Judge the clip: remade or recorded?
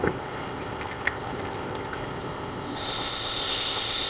remade